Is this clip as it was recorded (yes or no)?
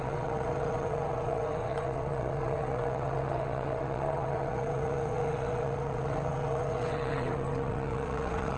no